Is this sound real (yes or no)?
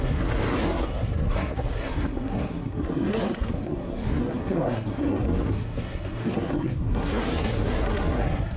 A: no